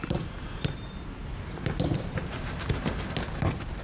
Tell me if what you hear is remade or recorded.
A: recorded